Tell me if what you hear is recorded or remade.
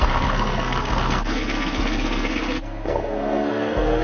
remade